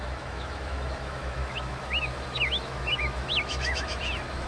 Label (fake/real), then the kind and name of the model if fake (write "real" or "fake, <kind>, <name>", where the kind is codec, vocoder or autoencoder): fake, autoencoder, DAC-VAE